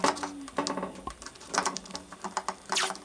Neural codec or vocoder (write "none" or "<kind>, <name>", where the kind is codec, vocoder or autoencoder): none